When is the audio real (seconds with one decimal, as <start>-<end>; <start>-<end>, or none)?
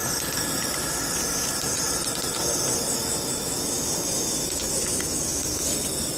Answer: 0.0-3.0; 5.7-6.2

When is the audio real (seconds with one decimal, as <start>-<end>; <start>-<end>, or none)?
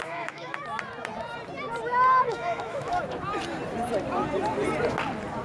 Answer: 0.6-2.3; 3.0-5.4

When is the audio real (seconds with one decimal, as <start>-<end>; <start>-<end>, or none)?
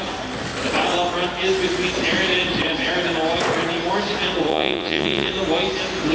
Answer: 0.0-4.5; 5.3-6.1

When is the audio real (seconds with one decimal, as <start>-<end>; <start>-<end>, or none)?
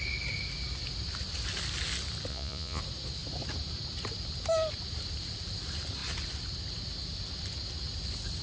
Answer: 0.0-2.3; 2.8-8.4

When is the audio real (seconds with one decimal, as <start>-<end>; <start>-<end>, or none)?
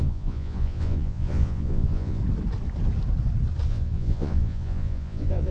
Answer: 2.2-3.7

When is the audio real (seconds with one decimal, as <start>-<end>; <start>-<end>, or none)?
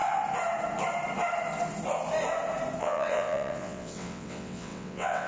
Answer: 0.0-2.8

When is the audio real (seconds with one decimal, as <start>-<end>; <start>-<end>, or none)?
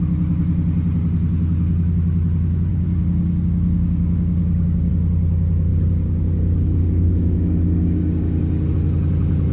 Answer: 0.0-2.7; 4.9-5.7; 8.7-9.5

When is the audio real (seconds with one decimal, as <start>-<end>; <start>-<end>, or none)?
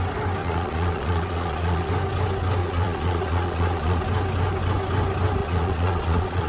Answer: 0.0-0.4; 1.9-2.6; 4.0-5.4